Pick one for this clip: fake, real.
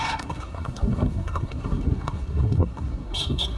fake